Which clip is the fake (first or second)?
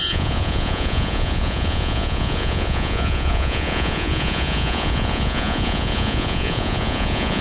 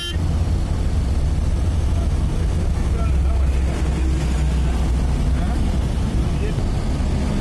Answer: first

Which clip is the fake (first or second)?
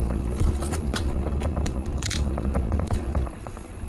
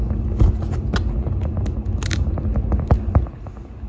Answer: first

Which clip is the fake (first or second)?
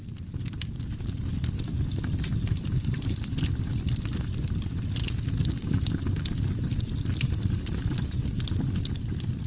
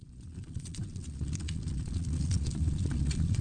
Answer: second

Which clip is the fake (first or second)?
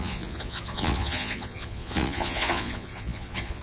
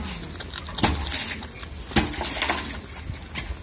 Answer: first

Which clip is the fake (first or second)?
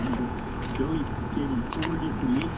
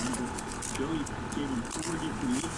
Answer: first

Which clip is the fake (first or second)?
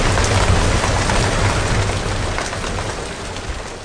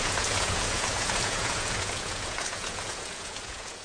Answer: second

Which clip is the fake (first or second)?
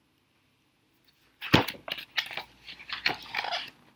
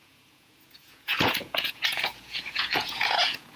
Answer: second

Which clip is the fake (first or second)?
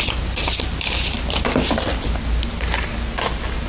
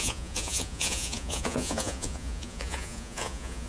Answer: second